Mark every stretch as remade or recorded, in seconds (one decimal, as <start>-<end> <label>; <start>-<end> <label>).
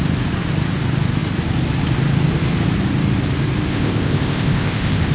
0.0-3.7 recorded; 3.7-5.1 remade